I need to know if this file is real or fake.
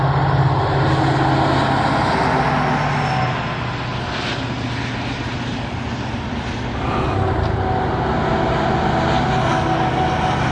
real